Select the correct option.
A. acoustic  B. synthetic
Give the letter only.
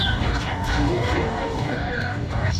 B